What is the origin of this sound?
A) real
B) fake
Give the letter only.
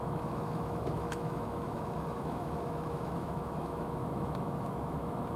B